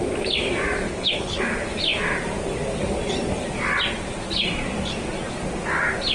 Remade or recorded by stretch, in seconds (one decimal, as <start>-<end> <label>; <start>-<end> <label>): 0.0-0.9 recorded; 0.9-1.4 remade; 1.4-6.1 recorded